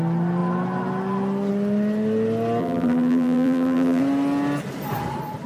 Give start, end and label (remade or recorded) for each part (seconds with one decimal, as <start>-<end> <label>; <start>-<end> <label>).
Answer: 0.0-2.6 recorded; 2.6-4.0 remade; 4.0-5.5 recorded